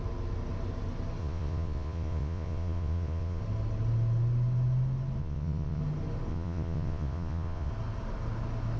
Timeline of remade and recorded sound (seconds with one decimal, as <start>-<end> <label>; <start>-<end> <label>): 0.0-1.2 recorded; 1.2-3.4 remade; 3.4-5.2 recorded; 5.2-5.8 remade; 5.8-6.3 recorded; 6.3-7.7 remade; 7.7-8.8 recorded